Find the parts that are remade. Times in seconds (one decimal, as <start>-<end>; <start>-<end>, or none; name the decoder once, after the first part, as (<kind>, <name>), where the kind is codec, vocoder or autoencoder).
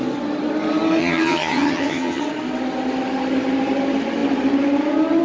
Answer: 1.0-2.2 (vocoder, HiFi-GAN)